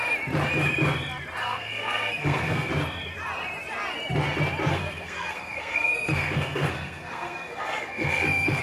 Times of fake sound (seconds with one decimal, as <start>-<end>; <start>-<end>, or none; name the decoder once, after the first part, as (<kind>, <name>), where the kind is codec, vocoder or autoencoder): 1.4-2.7 (codec, SNAC); 4.7-8.6